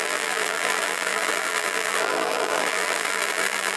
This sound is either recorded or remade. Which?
remade